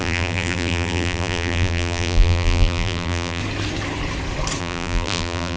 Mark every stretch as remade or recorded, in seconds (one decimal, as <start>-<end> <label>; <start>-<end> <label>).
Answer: 0.0-3.4 remade; 3.4-4.6 recorded; 4.6-5.6 remade